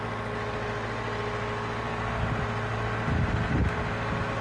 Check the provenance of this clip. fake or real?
real